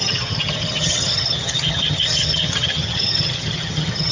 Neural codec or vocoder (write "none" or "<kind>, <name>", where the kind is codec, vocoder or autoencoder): vocoder, HiFi-GAN